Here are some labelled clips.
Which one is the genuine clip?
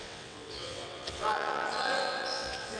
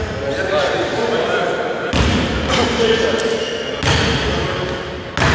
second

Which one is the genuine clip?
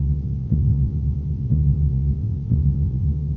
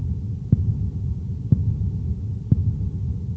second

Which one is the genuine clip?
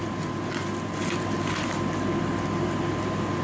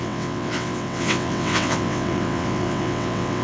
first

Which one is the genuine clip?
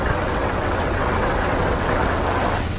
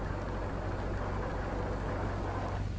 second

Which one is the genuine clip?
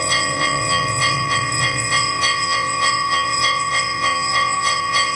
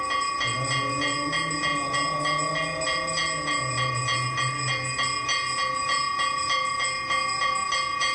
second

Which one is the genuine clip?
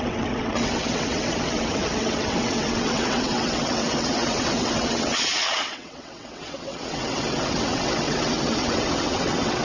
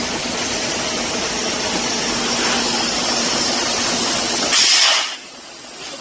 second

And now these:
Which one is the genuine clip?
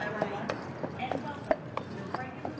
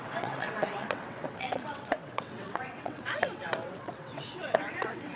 first